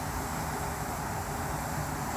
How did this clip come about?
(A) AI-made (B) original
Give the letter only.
A